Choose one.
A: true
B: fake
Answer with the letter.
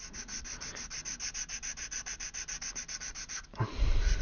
A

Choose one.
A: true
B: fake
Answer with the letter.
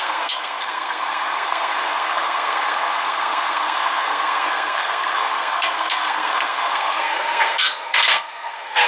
B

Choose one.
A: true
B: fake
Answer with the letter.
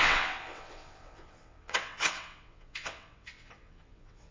B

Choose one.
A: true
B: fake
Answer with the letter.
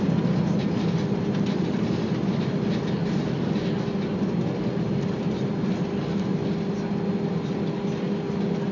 A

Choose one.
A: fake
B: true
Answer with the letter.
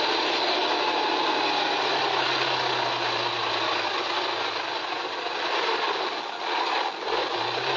B